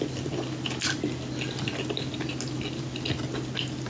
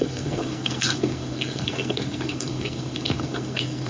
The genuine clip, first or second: first